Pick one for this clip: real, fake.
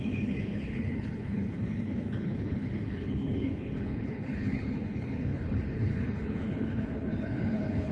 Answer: fake